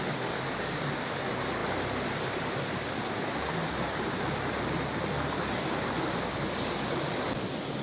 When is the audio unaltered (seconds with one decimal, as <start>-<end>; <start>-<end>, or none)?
0.0-7.8